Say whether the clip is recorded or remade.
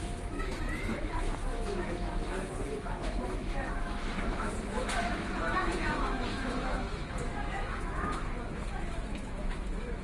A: remade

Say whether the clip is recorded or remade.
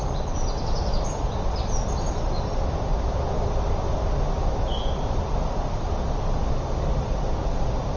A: recorded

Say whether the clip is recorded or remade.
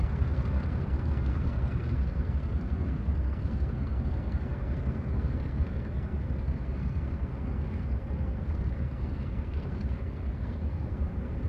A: remade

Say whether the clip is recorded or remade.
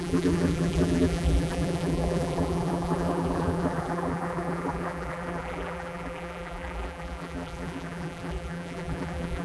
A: remade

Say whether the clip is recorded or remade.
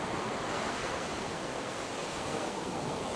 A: remade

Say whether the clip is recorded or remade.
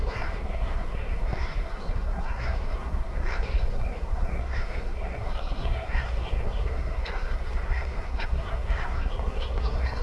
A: remade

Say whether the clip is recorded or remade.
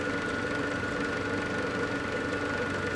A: recorded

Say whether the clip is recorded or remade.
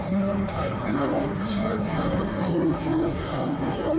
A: remade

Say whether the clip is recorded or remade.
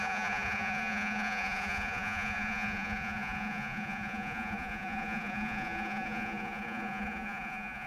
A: remade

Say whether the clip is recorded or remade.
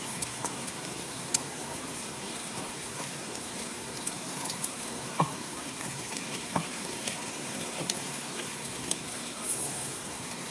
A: remade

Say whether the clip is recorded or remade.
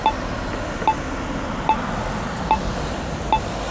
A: recorded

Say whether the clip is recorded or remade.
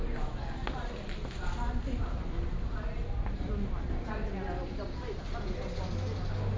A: recorded